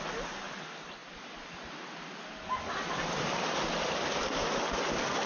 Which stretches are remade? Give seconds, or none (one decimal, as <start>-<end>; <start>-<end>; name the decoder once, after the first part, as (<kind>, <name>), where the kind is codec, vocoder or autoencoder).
none

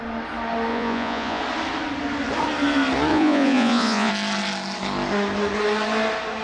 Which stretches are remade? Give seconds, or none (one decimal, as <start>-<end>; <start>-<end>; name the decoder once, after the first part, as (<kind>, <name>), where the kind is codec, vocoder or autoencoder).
0.7-1.4 (vocoder, Vocos); 3.1-4.1